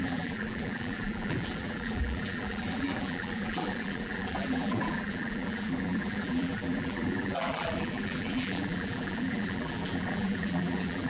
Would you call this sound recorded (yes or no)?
no